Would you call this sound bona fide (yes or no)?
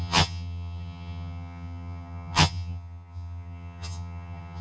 no